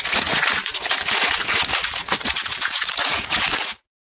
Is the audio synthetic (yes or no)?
yes